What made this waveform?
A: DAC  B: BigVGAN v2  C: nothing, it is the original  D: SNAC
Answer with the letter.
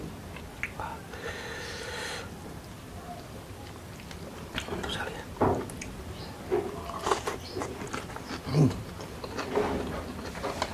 C